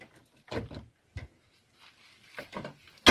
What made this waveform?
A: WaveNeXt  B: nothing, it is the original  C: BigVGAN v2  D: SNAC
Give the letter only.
B